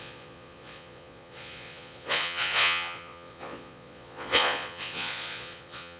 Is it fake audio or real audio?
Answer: fake